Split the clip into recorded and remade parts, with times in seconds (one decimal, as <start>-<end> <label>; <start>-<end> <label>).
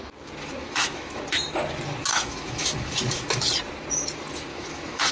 0.0-0.6 recorded; 0.6-1.2 remade; 1.2-2.1 recorded; 2.1-3.4 remade; 3.4-4.5 recorded; 4.5-5.1 remade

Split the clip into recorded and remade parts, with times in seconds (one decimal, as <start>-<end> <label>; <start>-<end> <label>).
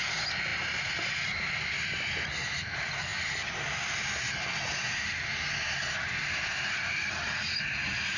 0.0-8.2 recorded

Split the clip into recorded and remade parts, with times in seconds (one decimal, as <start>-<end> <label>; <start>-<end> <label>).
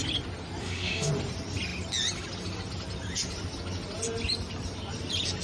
0.0-0.6 recorded; 0.6-1.1 remade; 1.1-5.4 recorded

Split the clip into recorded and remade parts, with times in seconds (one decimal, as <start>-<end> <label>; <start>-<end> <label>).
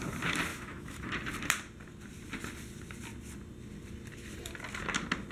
0.0-0.5 recorded; 0.5-1.1 remade; 1.1-5.3 recorded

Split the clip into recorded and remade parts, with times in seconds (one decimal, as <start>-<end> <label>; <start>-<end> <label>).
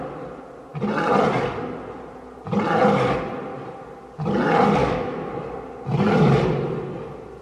0.0-4.8 recorded; 4.8-5.3 remade; 5.3-7.4 recorded